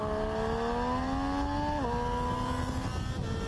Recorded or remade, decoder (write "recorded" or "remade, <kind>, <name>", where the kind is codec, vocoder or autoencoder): recorded